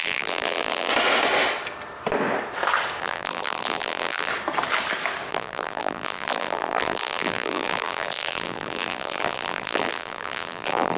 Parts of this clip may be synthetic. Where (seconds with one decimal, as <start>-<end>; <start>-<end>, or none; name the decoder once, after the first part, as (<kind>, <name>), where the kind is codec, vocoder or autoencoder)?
0.0-0.9 (vocoder, BigVGAN v2); 3.0-4.3; 5.3-11.0